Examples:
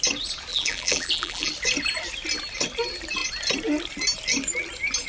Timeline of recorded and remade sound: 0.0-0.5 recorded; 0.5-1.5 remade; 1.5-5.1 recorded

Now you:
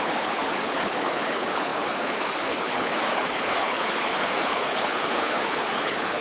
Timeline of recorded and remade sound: 0.0-6.2 remade

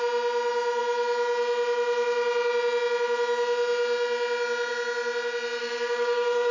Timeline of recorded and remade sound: 0.0-5.6 recorded; 5.6-6.5 remade

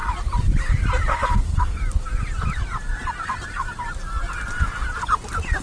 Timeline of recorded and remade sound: 0.0-1.1 recorded; 1.1-1.8 remade; 1.8-5.6 recorded